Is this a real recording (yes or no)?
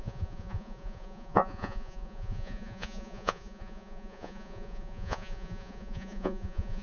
no